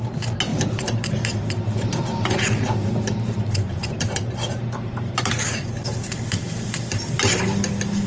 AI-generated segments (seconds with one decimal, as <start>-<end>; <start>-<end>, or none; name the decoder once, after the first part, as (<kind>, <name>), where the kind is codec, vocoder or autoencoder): 0.5-5.2 (vocoder, BigVGAN v2); 6.3-7.0